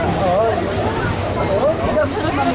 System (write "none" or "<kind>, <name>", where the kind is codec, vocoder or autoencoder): none